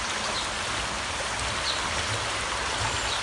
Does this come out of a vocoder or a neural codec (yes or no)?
no